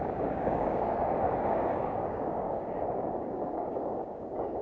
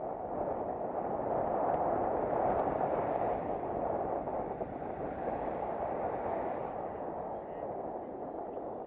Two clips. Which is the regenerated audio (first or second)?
first